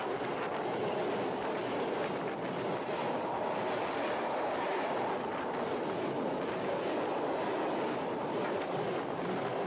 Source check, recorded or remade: recorded